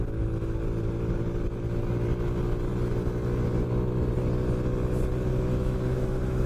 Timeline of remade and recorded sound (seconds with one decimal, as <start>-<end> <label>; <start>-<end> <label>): 0.0-5.3 recorded; 5.3-6.5 remade